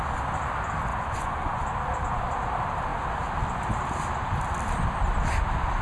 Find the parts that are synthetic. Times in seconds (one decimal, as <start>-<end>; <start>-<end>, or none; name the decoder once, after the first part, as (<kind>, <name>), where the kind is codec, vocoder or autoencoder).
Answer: 0.9-1.6 (vocoder, Vocos)